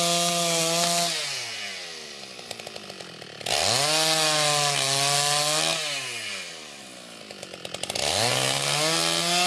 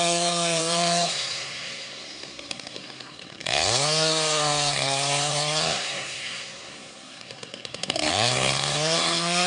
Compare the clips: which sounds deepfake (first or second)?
second